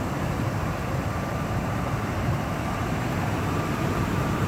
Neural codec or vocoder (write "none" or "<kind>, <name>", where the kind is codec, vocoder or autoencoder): vocoder, BigVGAN v2